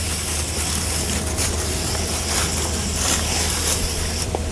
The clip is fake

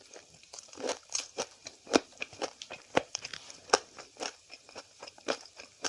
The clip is fake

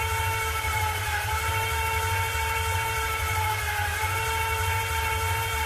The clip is fake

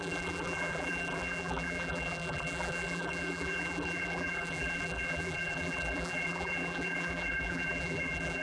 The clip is fake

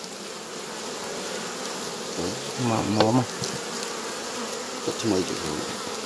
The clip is real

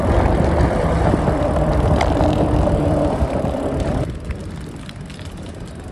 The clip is fake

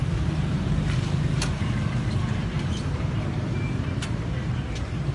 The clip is fake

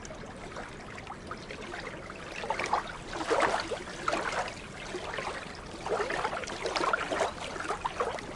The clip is real